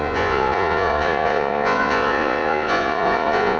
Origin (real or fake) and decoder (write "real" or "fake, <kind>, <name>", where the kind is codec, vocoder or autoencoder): fake, vocoder, Vocos